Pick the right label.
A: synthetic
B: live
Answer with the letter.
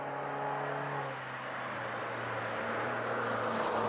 B